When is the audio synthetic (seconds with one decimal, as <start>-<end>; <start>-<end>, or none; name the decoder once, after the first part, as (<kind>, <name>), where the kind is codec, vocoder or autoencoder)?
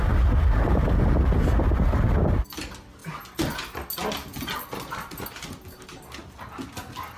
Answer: none